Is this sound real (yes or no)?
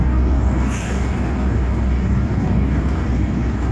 no